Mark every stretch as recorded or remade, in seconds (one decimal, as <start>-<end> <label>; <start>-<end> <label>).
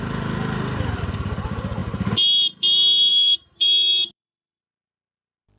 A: 0.0-5.6 recorded